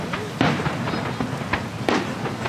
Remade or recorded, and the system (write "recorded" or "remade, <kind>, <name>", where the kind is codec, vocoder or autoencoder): recorded